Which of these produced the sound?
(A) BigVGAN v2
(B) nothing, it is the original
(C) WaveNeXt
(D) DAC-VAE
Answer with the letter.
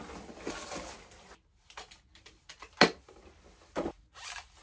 B